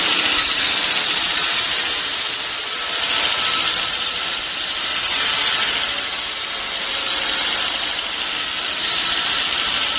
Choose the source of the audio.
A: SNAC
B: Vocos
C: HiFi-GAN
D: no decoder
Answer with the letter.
D